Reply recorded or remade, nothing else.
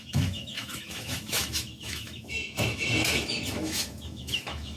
remade